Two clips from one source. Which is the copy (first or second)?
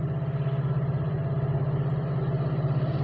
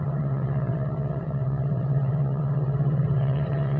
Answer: second